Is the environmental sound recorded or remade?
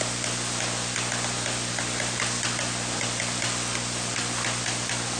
recorded